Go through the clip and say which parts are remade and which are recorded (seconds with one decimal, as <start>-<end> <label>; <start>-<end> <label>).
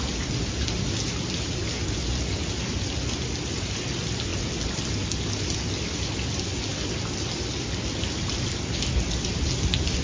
0.0-10.0 recorded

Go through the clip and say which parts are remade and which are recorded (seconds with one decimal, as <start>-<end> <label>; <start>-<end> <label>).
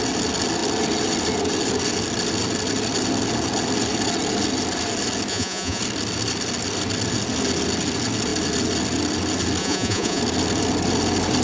0.0-5.3 recorded; 5.3-5.8 remade; 5.8-9.6 recorded; 9.6-10.2 remade; 10.2-11.4 recorded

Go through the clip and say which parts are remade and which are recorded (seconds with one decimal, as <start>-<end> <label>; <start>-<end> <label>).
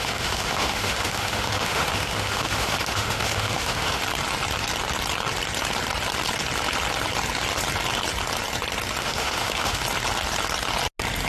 0.0-4.0 remade; 4.0-9.0 recorded; 9.0-9.8 remade; 9.8-11.3 recorded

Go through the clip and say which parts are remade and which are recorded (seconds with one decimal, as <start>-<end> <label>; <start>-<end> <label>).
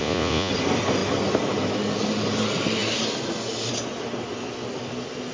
0.0-0.5 remade; 0.5-5.3 recorded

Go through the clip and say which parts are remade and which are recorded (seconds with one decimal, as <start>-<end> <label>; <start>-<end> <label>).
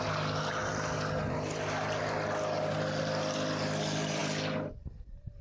0.0-5.4 recorded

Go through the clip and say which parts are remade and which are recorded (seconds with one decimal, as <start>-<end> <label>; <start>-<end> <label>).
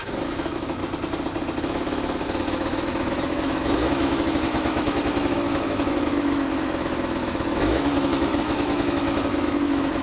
0.0-0.8 remade; 0.8-1.6 recorded; 1.6-10.0 remade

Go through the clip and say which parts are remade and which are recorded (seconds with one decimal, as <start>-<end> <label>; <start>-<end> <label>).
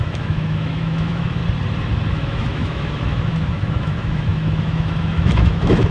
0.0-1.4 remade; 1.4-2.1 recorded; 2.1-5.9 remade